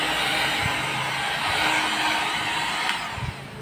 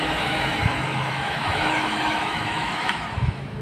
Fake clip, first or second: second